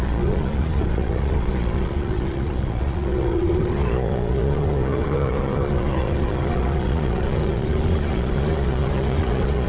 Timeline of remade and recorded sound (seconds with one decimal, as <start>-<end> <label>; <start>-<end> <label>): 0.0-9.7 remade